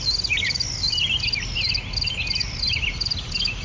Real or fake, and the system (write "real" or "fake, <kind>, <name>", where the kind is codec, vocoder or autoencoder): real